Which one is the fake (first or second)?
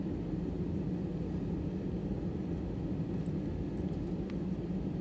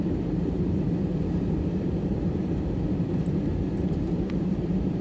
second